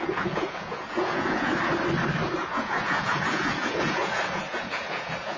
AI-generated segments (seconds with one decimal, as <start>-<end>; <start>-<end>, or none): 0.0-1.5; 2.3-5.4